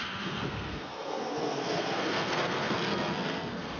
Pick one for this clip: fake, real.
fake